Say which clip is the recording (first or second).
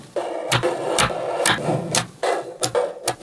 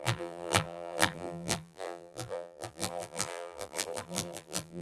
first